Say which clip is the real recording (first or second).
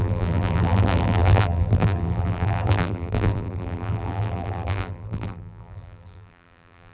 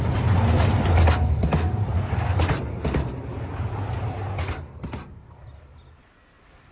second